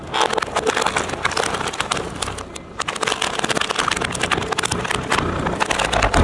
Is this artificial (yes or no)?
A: no